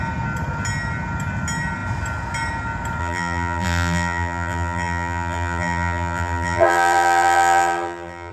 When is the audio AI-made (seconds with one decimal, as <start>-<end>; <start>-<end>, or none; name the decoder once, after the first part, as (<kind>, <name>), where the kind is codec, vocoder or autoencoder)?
3.0-8.3 (vocoder, BigVGAN v2)